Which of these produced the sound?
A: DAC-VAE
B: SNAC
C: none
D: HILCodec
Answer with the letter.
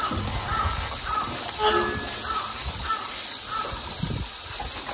C